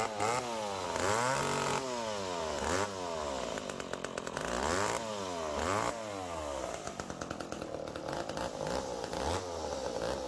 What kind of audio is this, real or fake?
real